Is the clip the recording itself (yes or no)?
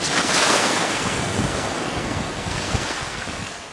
no